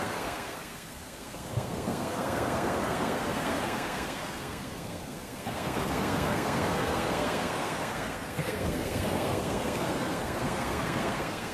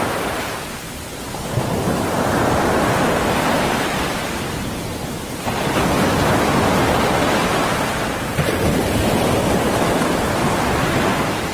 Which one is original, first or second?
second